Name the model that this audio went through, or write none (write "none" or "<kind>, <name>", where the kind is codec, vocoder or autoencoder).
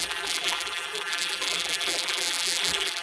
vocoder, BigVGAN v2